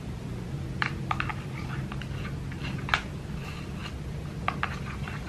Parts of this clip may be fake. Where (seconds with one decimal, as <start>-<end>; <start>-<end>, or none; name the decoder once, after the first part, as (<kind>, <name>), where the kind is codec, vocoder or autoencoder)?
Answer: 1.3-1.9 (vocoder, BigVGAN v2)